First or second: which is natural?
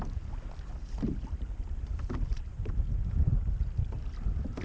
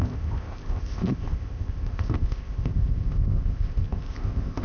first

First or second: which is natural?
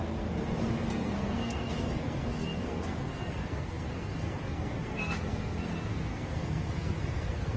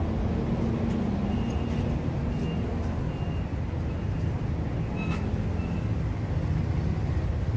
second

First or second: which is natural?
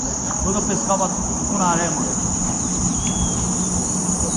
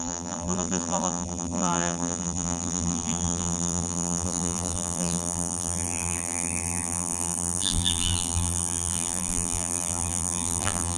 first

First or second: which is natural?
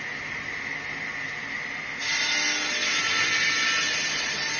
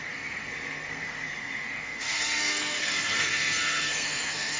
first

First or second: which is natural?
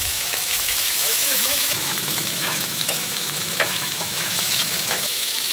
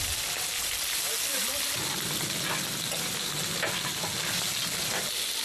second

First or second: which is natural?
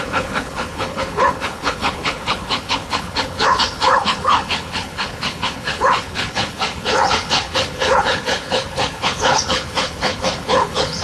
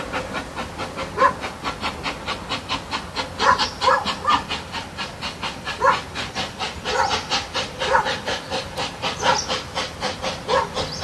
second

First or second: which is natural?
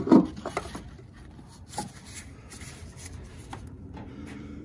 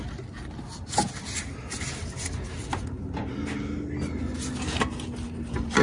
second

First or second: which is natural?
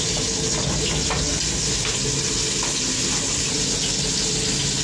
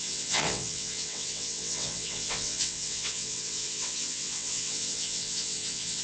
first